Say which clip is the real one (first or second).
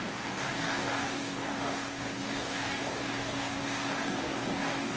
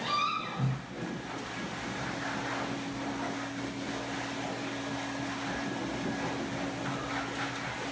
second